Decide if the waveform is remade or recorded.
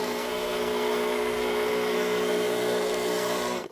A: remade